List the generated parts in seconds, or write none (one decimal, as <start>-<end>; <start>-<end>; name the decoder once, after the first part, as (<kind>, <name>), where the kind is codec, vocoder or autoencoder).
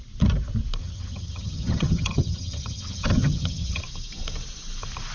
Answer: 0.8-3.8 (vocoder, HiFi-GAN)